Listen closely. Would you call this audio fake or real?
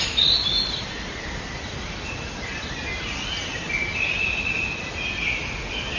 real